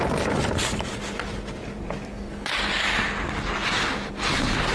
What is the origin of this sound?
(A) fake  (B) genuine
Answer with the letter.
B